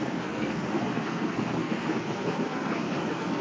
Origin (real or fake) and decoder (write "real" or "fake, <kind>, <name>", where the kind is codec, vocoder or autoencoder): fake, codec, SNAC